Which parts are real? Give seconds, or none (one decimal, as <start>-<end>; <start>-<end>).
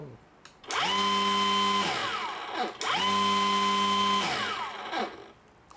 0.0-5.8